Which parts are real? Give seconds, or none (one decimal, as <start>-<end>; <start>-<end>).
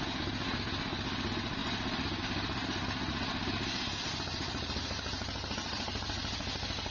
0.0-6.9